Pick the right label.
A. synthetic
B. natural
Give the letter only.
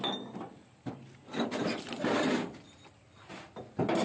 B